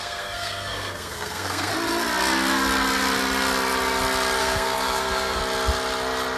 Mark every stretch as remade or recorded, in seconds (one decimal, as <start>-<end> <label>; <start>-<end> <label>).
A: 0.0-1.7 remade; 1.7-4.4 recorded; 4.4-5.4 remade; 5.4-6.4 recorded

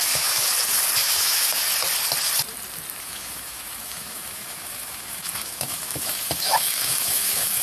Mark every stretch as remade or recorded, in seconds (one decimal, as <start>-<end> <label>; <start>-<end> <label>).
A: 0.0-0.5 remade; 0.5-1.0 recorded; 1.0-1.6 remade; 1.6-3.0 recorded; 3.0-7.6 remade

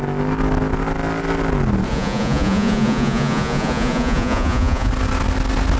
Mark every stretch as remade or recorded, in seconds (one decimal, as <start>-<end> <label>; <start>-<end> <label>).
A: 0.0-1.9 recorded; 1.9-4.9 remade; 4.9-5.8 recorded

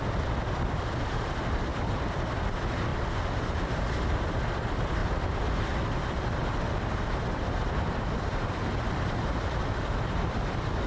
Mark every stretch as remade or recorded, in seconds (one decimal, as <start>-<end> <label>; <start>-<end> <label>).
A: 0.0-2.9 remade; 2.9-3.7 recorded; 3.7-5.0 remade; 5.0-5.7 recorded; 5.7-10.9 remade

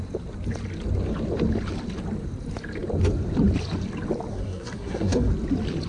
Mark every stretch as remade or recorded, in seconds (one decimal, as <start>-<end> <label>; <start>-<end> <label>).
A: 0.0-4.3 recorded; 4.3-5.3 remade; 5.3-5.9 recorded

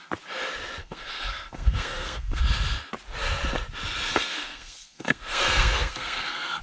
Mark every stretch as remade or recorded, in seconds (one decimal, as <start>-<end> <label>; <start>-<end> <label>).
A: 0.0-0.8 recorded; 0.8-2.4 remade; 2.4-4.1 recorded; 4.1-6.6 remade